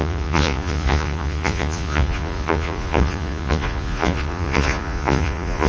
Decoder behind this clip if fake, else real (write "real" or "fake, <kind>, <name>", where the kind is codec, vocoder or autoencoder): fake, vocoder, Vocos